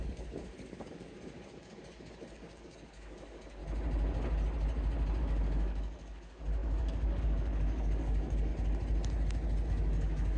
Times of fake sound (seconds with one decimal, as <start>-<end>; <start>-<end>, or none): 0.0-3.6; 5.2-8.5; 9.7-10.4